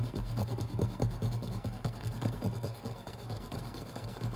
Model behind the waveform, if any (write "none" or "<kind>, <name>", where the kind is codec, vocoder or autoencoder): codec, SNAC